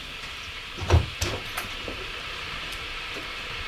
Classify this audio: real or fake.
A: fake